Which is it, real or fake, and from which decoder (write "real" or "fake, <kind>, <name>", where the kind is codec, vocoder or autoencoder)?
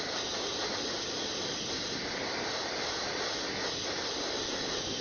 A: real